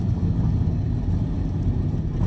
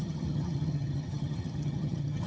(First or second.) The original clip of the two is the first